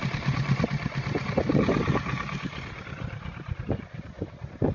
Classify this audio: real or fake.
real